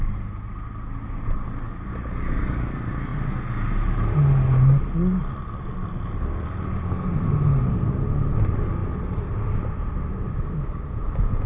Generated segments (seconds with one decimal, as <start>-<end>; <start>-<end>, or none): none